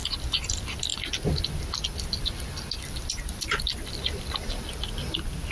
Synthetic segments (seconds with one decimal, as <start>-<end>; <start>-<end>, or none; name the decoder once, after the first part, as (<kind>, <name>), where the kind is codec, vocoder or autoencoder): none